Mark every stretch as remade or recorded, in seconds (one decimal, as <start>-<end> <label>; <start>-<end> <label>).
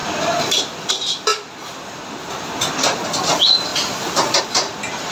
0.0-0.9 remade; 0.9-3.7 recorded; 3.7-4.4 remade; 4.4-5.1 recorded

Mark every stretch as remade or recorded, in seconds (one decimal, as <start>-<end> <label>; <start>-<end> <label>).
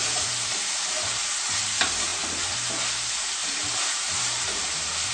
0.0-5.1 remade